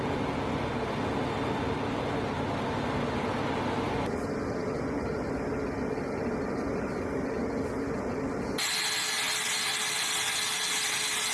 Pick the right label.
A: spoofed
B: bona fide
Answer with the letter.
B